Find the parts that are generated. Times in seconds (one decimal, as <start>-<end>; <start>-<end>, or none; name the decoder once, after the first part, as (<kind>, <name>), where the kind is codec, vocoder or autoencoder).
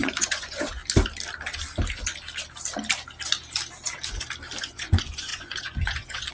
0.0-0.8 (vocoder, Vocos); 4.6-6.3